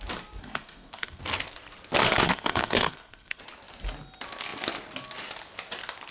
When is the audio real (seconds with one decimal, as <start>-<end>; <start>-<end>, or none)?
0.0-0.4; 1.2-2.0; 3.4-6.1